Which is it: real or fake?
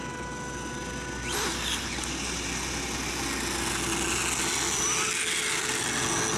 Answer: real